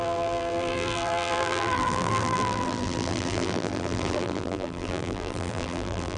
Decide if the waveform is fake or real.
fake